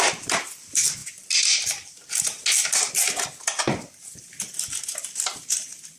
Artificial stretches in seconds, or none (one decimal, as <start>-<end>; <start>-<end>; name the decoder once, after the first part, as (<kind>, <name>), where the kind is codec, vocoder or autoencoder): none